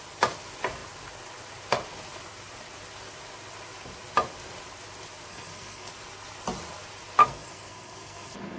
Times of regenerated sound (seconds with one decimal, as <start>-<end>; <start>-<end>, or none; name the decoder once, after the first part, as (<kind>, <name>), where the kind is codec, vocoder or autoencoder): 5.3-5.9 (codec, SNAC); 7.2-8.6